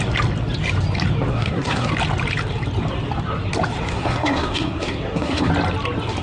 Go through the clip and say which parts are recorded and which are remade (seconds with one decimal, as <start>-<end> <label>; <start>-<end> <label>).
0.0-1.3 recorded; 1.3-1.9 remade; 1.9-3.9 recorded; 3.9-5.5 remade; 5.5-6.2 recorded